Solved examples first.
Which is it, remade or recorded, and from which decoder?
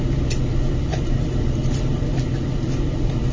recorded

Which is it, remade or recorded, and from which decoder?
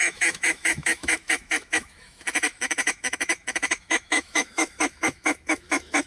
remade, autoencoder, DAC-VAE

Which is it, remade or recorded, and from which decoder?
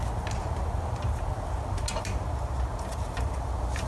recorded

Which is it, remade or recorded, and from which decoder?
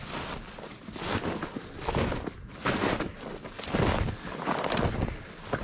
recorded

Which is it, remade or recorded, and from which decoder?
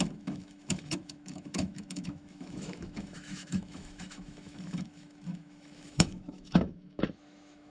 remade, autoencoder, DAC-VAE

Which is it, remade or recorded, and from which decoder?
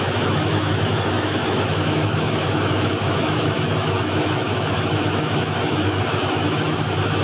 remade, autoencoder, DAC-VAE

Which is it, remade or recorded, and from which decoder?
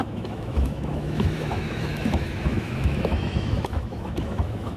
remade, autoencoder, DAC-VAE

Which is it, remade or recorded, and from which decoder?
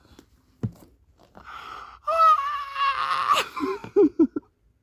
recorded